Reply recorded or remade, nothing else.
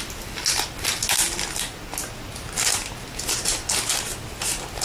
recorded